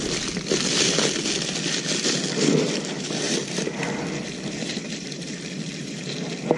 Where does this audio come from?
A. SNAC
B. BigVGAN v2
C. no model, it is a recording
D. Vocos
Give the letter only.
B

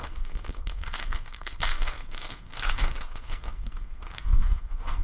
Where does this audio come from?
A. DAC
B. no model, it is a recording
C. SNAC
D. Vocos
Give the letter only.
C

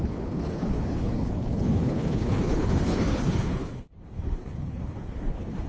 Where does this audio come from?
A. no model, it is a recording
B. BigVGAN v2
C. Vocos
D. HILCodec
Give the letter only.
D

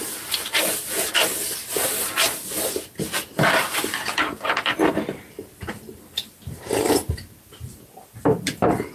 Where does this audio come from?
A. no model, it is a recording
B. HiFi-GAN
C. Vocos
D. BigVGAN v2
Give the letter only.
D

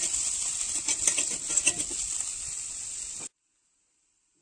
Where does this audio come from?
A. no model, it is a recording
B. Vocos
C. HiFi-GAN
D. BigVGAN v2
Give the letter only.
A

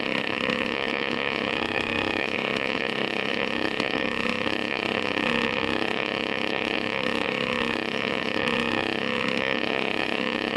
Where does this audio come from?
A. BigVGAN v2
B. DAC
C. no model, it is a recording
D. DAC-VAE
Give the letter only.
D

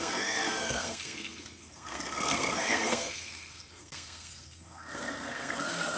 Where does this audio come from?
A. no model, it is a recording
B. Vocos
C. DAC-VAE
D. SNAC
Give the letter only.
D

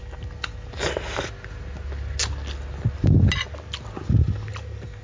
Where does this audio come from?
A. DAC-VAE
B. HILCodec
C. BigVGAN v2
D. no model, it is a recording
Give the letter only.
D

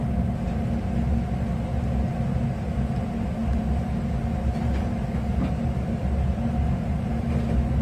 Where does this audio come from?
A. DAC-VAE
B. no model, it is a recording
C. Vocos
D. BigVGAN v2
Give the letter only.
D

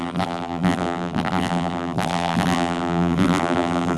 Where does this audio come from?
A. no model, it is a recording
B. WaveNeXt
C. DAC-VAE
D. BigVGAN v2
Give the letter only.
D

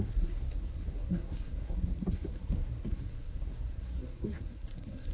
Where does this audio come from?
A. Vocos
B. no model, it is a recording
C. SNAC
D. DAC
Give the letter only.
C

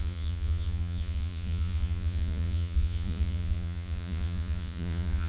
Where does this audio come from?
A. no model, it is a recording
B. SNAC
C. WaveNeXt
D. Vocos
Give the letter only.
D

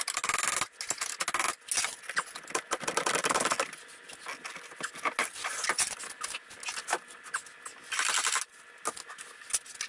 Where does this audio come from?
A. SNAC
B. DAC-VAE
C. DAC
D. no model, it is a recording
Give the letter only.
D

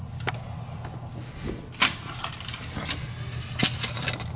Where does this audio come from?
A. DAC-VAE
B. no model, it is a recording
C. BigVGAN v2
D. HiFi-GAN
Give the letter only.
B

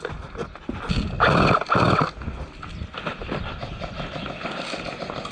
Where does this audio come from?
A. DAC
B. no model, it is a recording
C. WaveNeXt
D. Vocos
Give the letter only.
B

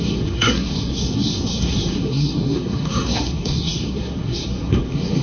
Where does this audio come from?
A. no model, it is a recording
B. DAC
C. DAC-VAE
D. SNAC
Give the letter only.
D